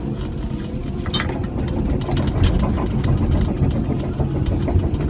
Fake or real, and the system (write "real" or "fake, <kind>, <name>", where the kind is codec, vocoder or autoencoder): real